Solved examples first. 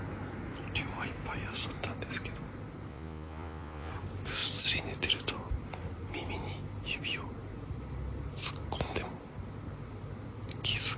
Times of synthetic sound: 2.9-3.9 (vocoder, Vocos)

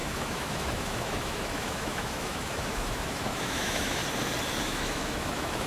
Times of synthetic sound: 0.0-4.0 (autoencoder, DAC-VAE); 4.6-5.7

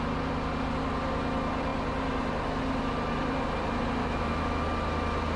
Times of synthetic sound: 4.0-4.6 (autoencoder, DAC-VAE)

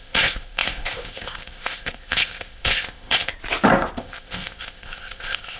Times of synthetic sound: 0.0-3.3 (codec, ZipCodec); 4.0-5.6

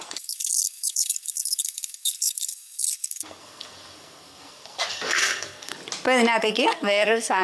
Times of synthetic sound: 0.0-5.7 (codec, SNAC); 6.4-7.4

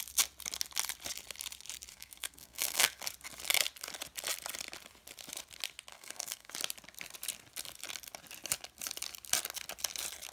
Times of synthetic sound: 1.9-3.0 (codec, SNAC); 5.9-6.5